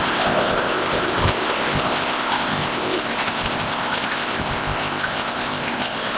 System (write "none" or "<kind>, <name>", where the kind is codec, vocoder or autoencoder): codec, ZipCodec